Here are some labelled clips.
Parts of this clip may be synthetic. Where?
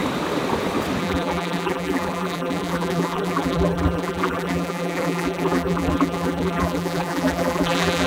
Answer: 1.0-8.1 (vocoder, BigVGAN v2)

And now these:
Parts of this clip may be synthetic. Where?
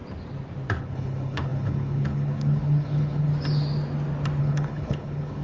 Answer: 0.8-3.3 (codec, HILCodec); 4.4-5.4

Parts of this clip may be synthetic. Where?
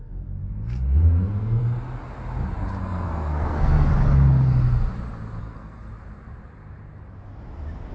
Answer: 0.0-1.6 (codec, SNAC); 2.8-3.9; 5.4-5.9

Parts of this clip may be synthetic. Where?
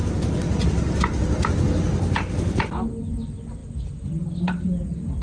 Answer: none